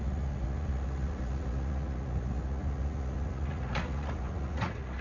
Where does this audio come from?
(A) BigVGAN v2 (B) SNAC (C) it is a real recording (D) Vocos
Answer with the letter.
D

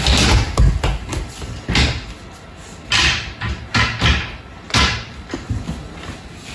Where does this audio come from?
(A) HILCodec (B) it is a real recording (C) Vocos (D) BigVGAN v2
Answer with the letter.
B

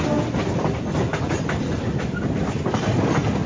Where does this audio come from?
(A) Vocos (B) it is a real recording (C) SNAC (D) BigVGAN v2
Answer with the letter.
B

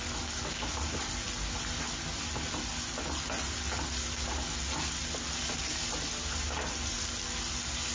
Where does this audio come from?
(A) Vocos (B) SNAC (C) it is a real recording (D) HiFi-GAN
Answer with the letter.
C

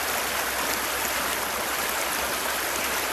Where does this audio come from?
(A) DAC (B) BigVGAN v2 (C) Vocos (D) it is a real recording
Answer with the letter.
D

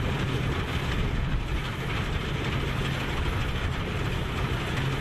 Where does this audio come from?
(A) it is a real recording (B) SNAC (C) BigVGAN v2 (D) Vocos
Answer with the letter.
A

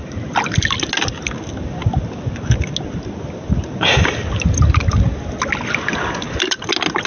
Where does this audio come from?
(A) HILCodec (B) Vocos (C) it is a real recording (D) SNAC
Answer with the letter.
C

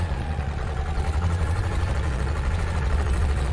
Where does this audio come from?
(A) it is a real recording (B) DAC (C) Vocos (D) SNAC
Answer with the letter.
C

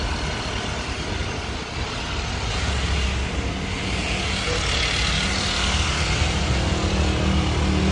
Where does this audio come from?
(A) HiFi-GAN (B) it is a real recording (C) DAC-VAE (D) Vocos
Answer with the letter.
B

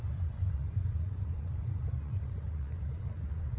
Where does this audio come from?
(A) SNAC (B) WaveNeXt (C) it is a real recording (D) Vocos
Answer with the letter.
D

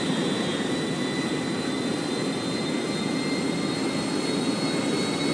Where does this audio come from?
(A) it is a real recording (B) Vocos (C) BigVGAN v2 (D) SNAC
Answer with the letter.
A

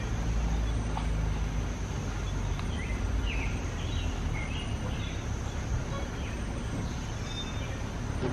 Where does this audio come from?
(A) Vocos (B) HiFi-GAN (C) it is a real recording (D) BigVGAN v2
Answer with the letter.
C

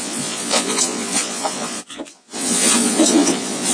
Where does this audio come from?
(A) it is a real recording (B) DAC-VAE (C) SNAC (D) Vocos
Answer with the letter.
D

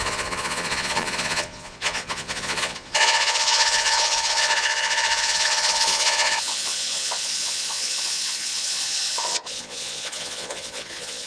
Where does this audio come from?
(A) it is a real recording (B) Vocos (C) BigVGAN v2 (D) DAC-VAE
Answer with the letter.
B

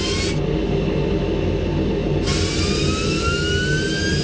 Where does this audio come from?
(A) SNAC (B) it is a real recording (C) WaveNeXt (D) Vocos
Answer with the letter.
B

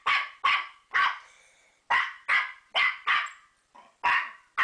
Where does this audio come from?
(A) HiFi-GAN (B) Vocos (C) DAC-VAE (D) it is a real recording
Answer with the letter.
D